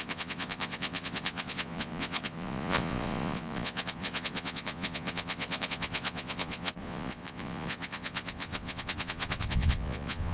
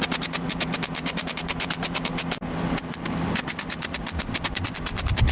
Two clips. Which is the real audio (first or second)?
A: second